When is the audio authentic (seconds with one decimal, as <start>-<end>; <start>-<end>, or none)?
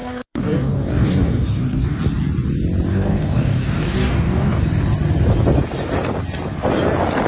2.0-2.9; 4.6-7.3